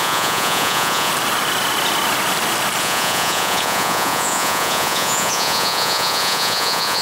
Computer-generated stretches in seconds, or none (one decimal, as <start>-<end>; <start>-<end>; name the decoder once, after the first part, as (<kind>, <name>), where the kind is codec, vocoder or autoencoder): 0.0-1.1 (vocoder, Vocos); 2.8-7.0